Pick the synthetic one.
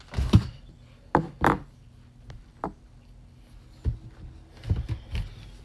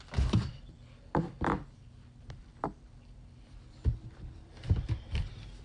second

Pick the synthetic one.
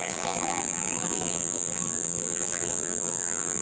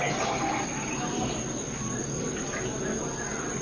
first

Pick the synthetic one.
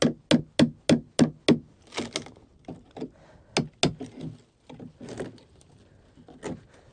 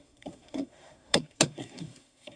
second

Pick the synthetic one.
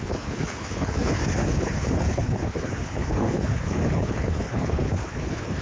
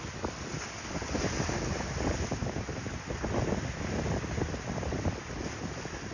first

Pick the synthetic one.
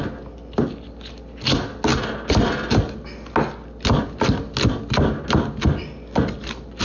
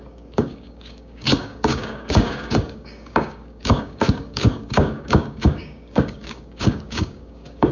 second